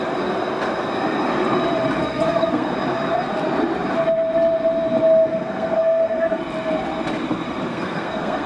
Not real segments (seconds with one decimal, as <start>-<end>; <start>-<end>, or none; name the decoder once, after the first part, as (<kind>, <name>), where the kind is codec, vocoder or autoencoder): 2.0-2.7 (codec, SNAC); 5.3-6.4; 7.7-8.5